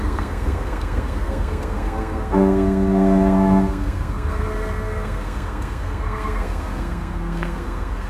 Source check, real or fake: fake